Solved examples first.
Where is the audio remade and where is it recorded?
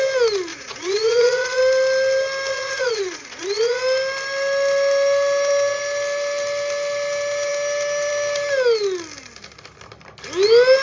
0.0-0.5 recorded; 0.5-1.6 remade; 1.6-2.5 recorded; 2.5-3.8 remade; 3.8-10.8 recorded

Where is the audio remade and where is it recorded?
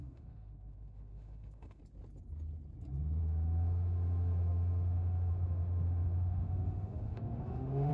0.0-1.8 remade; 1.8-3.2 recorded; 3.2-7.9 remade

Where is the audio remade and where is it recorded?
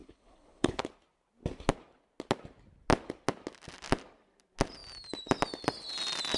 0.0-0.8 remade; 0.8-6.4 recorded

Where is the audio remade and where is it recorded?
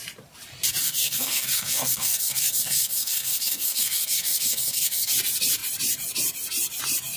0.0-0.8 recorded; 0.8-5.1 remade; 5.1-7.2 recorded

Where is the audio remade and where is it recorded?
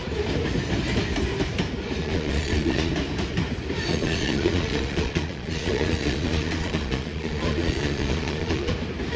0.0-2.0 recorded; 2.0-2.9 remade; 2.9-3.9 recorded; 3.9-8.7 remade; 8.7-9.2 recorded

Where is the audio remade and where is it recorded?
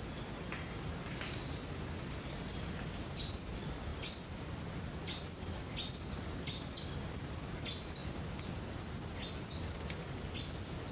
0.0-10.9 recorded